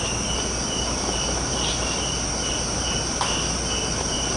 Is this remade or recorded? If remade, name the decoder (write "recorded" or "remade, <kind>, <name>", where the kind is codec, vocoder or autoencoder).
recorded